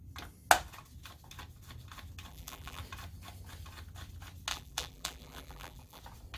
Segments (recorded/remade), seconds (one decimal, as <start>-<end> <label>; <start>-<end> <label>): 0.0-2.3 recorded; 2.3-2.8 remade; 2.8-4.5 recorded; 4.5-6.0 remade; 6.0-6.4 recorded